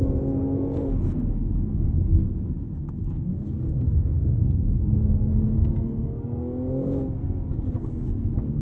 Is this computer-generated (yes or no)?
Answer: yes